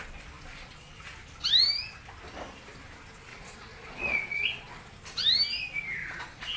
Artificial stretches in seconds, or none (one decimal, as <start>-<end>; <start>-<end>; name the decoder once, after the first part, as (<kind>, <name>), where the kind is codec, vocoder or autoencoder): 0.5-1.0 (vocoder, Vocos); 3.3-4.7; 6.0-6.6